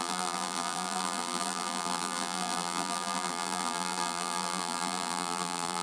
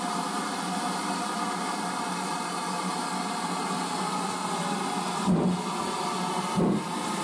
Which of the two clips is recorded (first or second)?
second